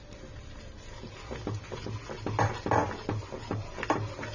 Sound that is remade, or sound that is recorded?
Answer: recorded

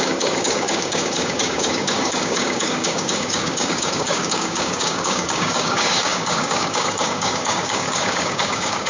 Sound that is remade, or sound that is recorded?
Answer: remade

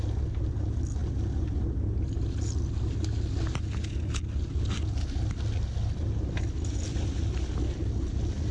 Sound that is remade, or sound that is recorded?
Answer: recorded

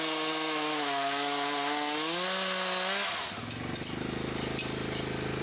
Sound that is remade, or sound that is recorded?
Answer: recorded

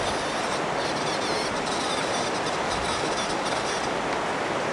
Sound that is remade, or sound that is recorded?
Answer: recorded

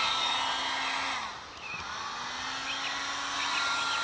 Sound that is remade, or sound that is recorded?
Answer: recorded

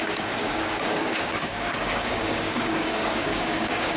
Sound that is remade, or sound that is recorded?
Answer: remade